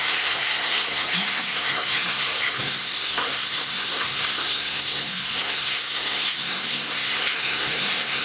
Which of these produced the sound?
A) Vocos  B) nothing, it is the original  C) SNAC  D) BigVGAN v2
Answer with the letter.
C